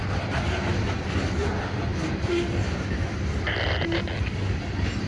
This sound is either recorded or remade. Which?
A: recorded